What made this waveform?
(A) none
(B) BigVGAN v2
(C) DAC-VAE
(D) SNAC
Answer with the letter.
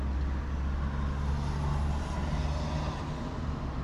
A